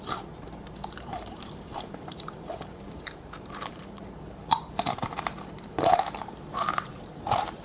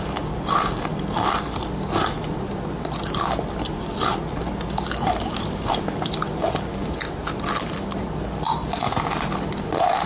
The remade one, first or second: first